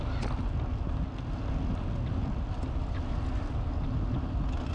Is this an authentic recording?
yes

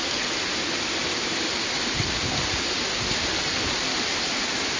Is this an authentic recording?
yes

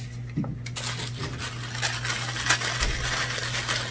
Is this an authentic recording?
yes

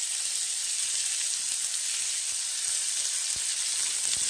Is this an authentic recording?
yes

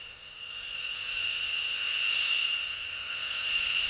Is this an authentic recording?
yes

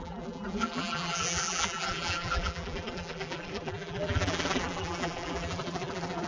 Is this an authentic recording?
no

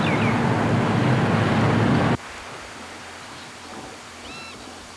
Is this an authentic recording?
yes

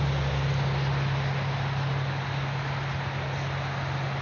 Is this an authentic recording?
yes